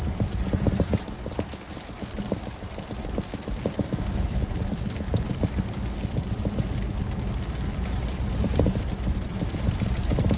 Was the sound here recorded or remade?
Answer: remade